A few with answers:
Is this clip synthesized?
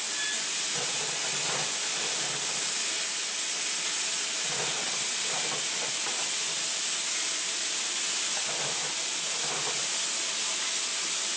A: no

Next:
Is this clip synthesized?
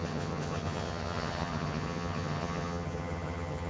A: yes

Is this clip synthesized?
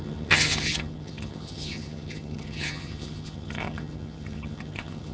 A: yes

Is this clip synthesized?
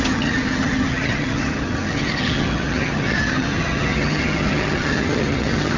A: yes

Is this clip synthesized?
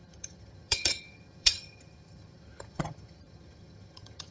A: yes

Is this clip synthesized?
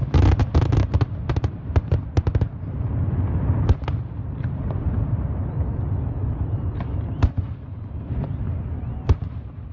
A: no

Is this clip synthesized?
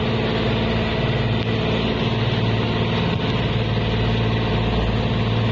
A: no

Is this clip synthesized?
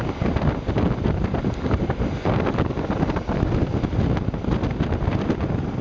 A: no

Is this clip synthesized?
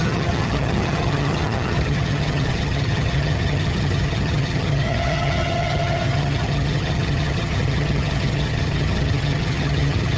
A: yes